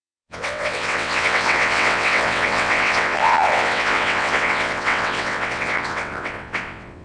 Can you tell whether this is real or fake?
fake